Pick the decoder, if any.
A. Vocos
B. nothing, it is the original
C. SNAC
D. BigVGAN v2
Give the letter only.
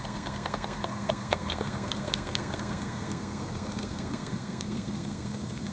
C